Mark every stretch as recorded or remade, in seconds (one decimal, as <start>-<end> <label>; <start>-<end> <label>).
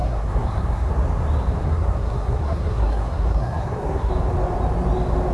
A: 0.0-0.9 remade; 0.9-1.6 recorded; 1.6-4.1 remade; 4.1-5.3 recorded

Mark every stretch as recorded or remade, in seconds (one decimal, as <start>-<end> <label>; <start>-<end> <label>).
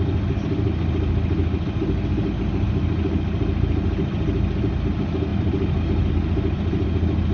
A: 0.0-7.3 recorded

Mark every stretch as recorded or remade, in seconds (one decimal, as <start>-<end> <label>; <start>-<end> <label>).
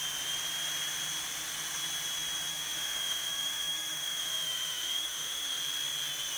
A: 0.0-2.5 recorded; 2.5-5.6 remade; 5.6-6.4 recorded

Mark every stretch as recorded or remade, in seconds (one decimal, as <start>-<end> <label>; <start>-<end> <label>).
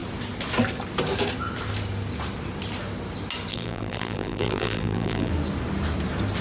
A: 0.0-3.5 recorded; 3.5-5.3 remade; 5.3-6.4 recorded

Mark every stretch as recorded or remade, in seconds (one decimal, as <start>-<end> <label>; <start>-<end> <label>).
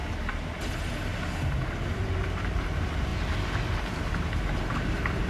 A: 0.0-0.6 recorded; 0.6-1.1 remade; 1.1-2.0 recorded; 2.0-3.1 remade; 3.1-4.6 recorded; 4.6-5.3 remade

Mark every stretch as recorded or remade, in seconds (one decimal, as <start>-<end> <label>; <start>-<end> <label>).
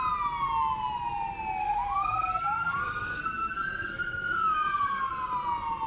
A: 0.0-1.6 recorded; 1.6-5.1 remade; 5.1-5.9 recorded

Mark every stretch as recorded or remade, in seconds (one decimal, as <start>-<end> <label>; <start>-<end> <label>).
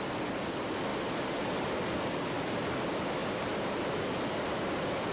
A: 0.0-0.9 recorded; 0.9-2.6 remade; 2.6-3.2 recorded; 3.2-4.0 remade; 4.0-5.1 recorded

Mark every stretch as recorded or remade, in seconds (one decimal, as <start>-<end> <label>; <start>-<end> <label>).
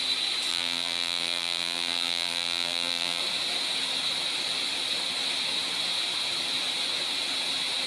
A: 0.0-0.5 recorded; 0.5-3.2 remade; 3.2-7.9 recorded